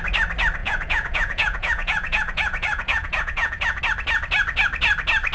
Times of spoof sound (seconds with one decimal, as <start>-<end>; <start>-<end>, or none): 0.6-3.8